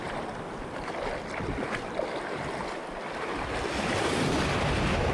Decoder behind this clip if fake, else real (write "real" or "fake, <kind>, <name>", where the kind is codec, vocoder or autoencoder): real